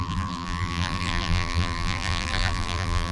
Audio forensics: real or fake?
fake